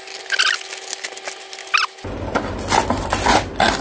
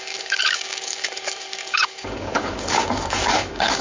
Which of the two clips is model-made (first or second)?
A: second